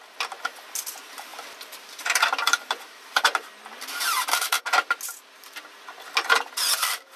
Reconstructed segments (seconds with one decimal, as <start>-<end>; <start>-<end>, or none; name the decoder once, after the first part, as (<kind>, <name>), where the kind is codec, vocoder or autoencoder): 1.3-4.6 (vocoder, BigVGAN v2)